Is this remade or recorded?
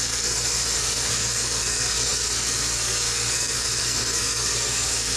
remade